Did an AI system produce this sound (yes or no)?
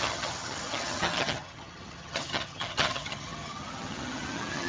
yes